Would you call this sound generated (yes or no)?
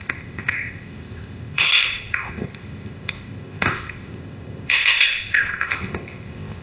yes